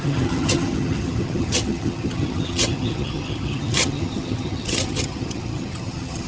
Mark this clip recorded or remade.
remade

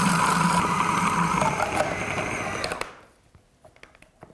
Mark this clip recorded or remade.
recorded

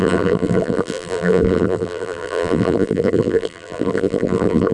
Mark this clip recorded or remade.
remade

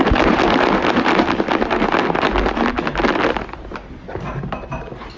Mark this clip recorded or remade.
recorded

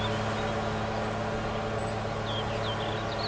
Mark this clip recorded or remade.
recorded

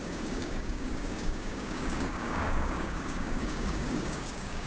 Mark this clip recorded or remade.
remade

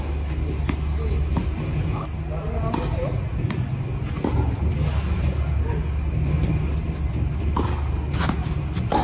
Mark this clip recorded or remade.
recorded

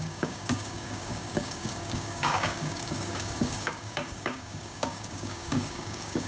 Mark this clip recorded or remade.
remade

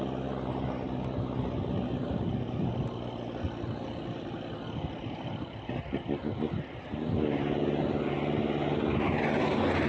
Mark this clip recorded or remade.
recorded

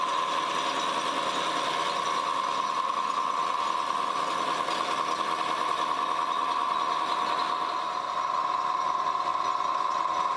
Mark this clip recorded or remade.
recorded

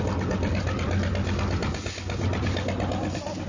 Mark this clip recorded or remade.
recorded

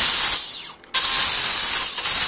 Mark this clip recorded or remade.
recorded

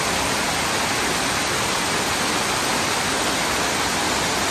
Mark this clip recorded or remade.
recorded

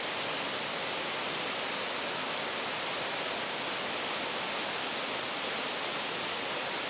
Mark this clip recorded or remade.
recorded